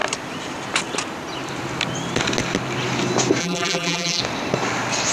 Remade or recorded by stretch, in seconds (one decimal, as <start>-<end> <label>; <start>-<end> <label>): 0.0-3.4 recorded; 3.4-4.2 remade; 4.2-5.1 recorded